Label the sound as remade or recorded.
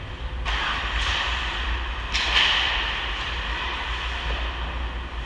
recorded